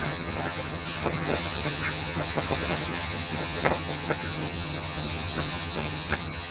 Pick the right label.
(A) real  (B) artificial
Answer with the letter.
B